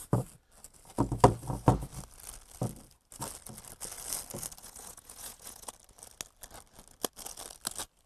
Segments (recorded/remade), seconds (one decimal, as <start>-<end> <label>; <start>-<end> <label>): 0.0-4.6 recorded; 4.6-5.7 remade; 5.7-8.1 recorded